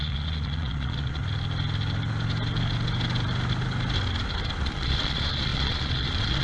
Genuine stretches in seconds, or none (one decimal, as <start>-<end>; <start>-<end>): 1.2-4.6